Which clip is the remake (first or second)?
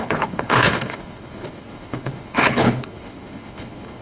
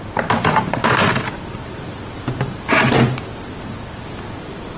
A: first